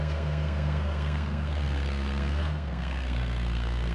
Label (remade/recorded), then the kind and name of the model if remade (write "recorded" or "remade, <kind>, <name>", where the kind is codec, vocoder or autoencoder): remade, codec, SNAC